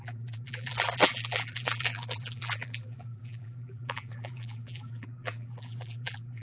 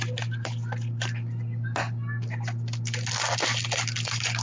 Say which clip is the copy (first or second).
first